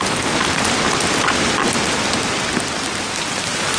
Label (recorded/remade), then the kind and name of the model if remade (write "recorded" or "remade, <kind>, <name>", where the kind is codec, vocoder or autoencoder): recorded